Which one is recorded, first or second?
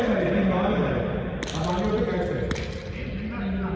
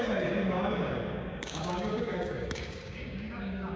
first